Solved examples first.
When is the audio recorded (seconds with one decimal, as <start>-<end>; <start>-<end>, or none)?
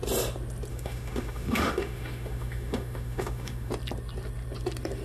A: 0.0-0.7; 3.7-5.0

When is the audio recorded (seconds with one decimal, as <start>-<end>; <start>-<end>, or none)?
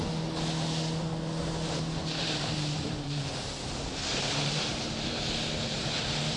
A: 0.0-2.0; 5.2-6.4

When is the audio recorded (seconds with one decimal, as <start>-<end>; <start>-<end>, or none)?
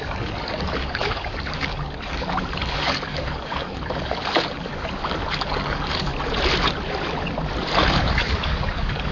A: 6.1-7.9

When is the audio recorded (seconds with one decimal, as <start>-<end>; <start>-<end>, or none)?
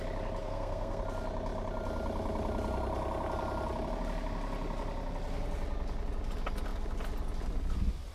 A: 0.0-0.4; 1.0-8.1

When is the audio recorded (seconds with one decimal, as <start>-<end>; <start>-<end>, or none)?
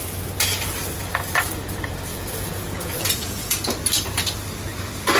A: 0.0-2.1; 3.7-5.2